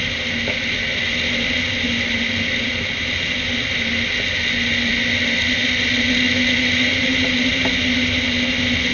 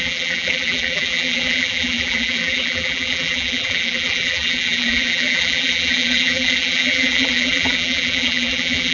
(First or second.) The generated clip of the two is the second